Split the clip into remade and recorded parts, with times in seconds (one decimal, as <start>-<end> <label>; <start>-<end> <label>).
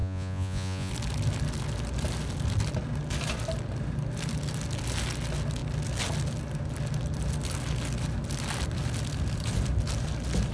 0.0-0.9 remade; 0.9-10.5 recorded